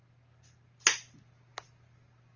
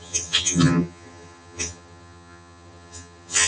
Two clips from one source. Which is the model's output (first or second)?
second